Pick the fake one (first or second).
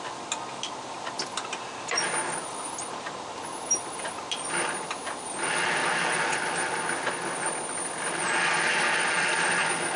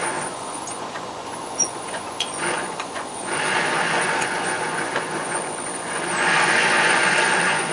second